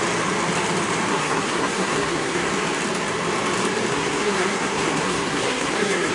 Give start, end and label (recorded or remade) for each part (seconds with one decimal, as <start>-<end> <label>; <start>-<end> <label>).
0.0-1.1 recorded; 1.1-2.5 remade; 2.5-3.9 recorded; 3.9-6.1 remade

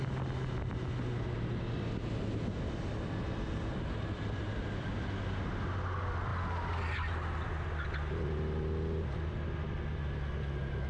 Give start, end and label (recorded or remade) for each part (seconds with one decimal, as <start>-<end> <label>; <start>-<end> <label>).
0.0-10.9 recorded

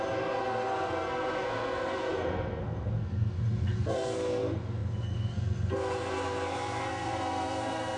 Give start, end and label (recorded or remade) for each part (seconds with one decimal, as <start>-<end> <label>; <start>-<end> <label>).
0.0-8.0 remade

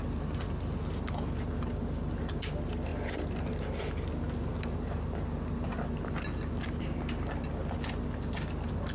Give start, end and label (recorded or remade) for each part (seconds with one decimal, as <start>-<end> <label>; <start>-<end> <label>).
0.0-8.9 recorded

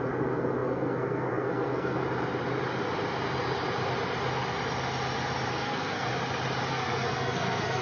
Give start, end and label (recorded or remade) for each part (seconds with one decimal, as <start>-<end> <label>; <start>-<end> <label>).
0.0-2.0 remade; 2.0-5.5 recorded; 5.5-6.1 remade; 6.1-6.7 recorded; 6.7-7.8 remade

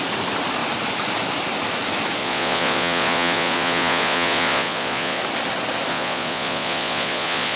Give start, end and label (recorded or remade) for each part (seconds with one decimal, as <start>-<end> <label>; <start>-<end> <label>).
0.0-2.2 recorded; 2.2-5.2 remade; 5.2-5.9 recorded; 5.9-7.6 remade

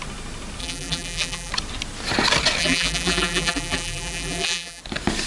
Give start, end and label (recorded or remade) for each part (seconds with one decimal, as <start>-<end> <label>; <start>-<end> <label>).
0.0-0.6 recorded; 0.6-1.5 remade; 1.5-2.6 recorded; 2.6-4.8 remade; 4.8-5.3 recorded